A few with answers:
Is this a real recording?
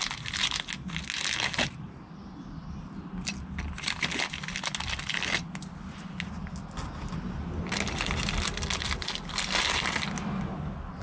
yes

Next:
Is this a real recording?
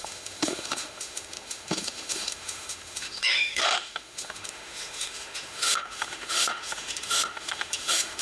no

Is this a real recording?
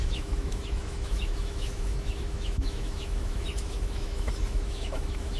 no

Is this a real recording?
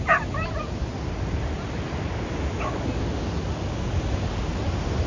yes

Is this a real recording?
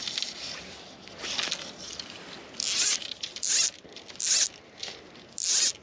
yes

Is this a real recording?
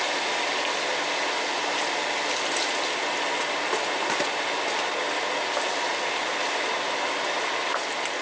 yes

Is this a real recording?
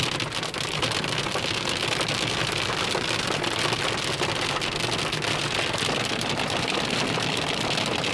yes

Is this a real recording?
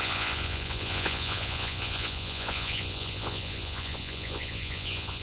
no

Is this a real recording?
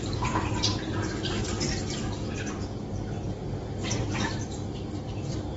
yes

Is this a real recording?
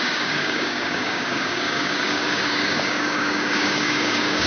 no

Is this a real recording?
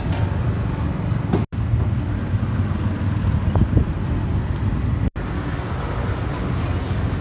yes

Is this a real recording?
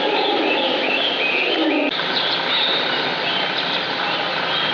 yes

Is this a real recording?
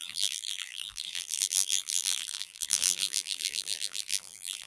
no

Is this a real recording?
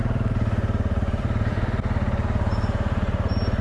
no